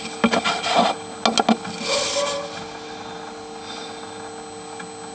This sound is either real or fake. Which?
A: real